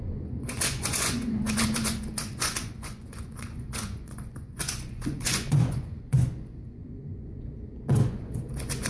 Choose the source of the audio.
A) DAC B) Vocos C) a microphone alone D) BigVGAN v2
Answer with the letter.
B